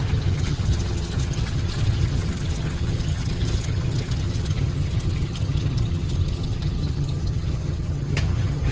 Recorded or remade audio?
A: remade